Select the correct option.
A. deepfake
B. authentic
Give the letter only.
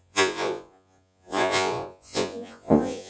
A